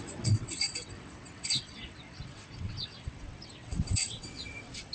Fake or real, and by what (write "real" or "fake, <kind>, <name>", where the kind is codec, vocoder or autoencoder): fake, vocoder, WaveNeXt